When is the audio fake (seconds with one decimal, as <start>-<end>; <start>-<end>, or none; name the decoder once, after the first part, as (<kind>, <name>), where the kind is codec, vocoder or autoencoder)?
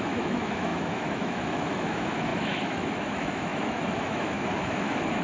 0.0-5.2 (autoencoder, DAC-VAE)